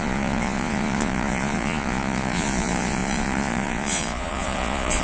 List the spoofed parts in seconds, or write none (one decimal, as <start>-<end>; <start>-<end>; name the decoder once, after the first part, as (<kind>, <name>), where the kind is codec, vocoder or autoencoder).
0.0-5.0 (vocoder, Vocos)